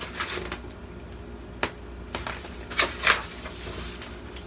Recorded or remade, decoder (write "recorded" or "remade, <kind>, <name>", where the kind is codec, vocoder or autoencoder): recorded